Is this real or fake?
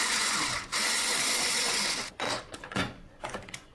fake